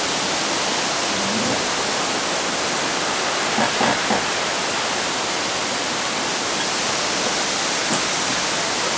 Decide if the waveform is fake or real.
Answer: real